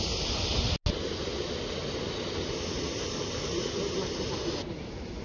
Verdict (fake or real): real